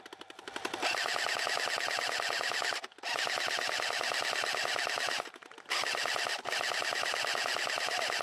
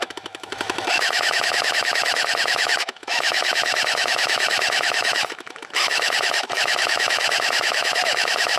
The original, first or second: first